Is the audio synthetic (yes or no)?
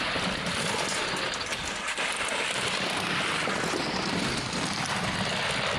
no